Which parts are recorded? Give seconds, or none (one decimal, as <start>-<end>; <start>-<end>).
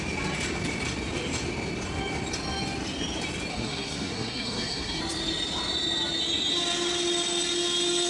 0.0-3.5; 5.0-8.1